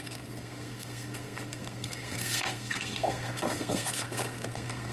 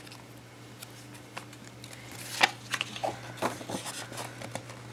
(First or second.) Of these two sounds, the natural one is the second